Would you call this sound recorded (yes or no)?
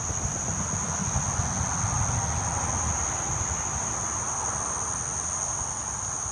yes